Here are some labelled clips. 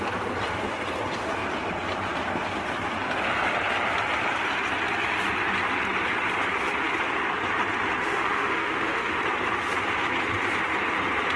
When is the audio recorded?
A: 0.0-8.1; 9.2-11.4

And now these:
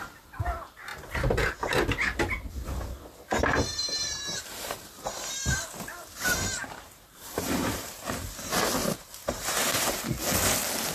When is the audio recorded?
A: 0.0-3.7; 4.8-6.6; 7.9-8.8; 10.0-10.9